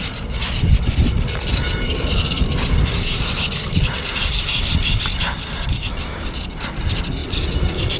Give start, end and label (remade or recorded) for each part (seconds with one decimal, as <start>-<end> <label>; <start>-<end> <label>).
0.0-8.0 recorded